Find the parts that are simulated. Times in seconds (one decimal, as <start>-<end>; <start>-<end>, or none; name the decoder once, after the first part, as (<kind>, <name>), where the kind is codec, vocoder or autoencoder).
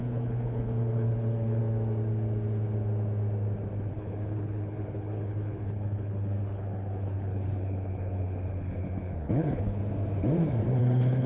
0.0-1.6 (codec, HILCodec); 3.9-9.8; 10.8-11.3